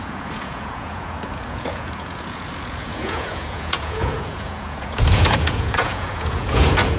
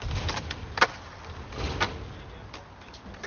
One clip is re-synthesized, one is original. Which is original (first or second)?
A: second